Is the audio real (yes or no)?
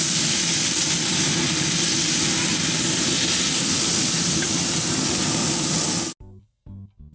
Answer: yes